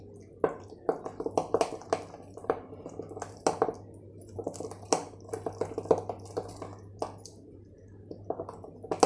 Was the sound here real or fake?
real